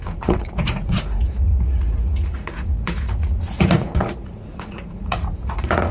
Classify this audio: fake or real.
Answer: fake